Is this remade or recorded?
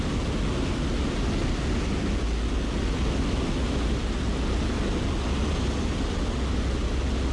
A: recorded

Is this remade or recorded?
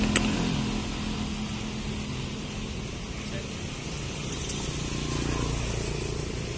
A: recorded